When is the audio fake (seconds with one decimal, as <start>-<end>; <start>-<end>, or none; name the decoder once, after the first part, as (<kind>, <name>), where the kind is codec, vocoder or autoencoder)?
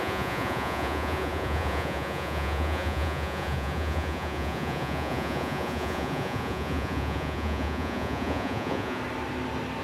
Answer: 0.0-9.0 (vocoder, Vocos)